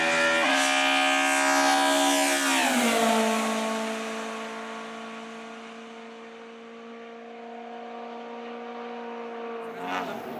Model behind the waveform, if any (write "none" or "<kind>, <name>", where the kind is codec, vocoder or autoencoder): none